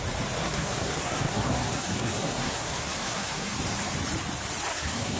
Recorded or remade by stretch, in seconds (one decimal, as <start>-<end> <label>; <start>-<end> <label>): 0.0-0.4 recorded; 0.4-3.5 remade; 3.5-4.7 recorded; 4.7-5.2 remade